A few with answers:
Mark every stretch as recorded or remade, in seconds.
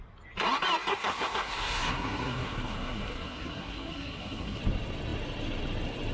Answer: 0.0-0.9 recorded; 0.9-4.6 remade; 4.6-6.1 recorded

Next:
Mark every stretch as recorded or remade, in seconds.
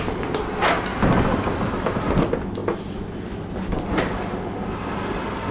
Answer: 0.0-5.5 recorded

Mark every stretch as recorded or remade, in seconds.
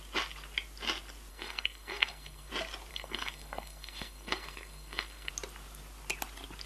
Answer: 0.0-1.3 recorded; 1.3-2.5 remade; 2.5-2.9 recorded; 2.9-5.3 remade; 5.3-6.7 recorded